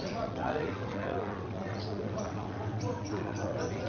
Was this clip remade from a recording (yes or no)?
yes